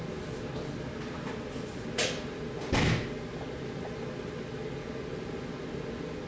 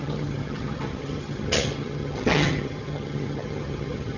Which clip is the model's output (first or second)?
second